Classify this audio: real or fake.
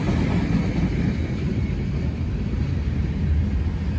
real